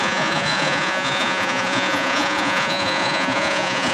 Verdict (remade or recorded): remade